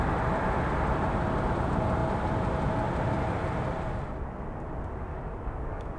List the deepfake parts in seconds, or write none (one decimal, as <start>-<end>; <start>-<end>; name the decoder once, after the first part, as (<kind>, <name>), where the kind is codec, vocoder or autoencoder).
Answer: 5.1-6.0 (codec, DAC)